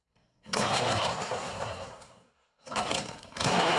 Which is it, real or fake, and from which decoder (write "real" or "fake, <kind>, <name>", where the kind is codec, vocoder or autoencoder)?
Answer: fake, codec, SNAC